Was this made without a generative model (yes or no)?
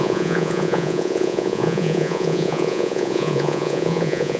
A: no